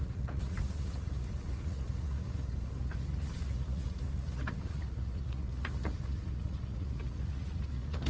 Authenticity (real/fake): fake